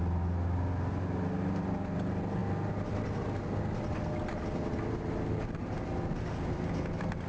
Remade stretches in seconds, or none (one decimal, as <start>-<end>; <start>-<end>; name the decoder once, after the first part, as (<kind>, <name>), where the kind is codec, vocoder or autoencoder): none